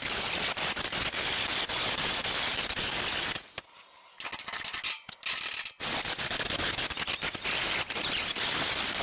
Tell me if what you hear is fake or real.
real